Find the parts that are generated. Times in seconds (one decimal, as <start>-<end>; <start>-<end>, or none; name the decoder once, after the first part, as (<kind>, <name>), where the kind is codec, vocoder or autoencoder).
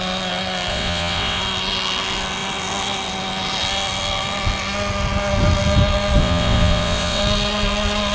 0.7-1.4 (vocoder, WaveNeXt); 6.2-7.2